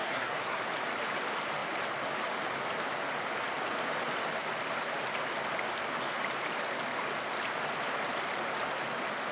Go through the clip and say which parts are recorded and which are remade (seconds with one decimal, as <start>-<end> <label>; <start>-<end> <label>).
0.0-0.6 remade; 0.6-9.3 recorded